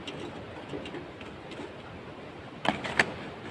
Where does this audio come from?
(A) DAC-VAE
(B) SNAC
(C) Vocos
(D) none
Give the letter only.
D